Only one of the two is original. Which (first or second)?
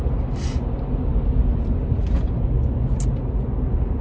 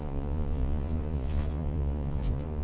first